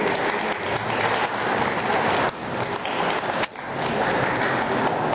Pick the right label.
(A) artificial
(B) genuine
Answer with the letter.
B